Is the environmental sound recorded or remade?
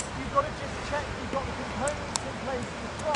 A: remade